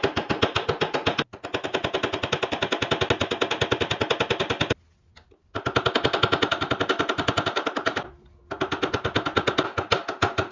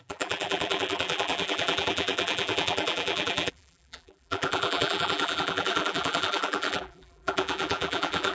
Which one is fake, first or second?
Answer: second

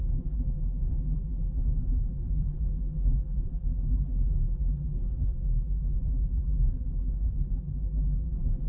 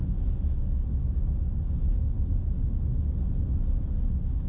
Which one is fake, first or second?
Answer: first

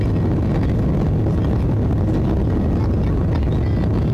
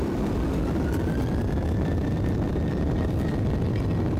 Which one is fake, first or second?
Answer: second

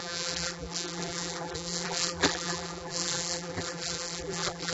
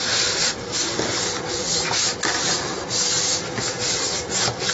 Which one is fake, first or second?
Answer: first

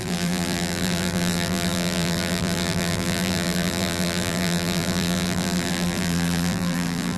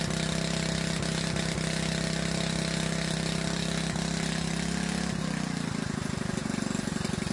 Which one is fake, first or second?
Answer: first